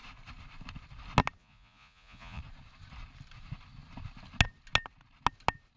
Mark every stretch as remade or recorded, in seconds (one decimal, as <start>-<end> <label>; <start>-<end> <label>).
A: 0.0-1.4 recorded; 1.4-2.4 remade; 2.4-5.8 recorded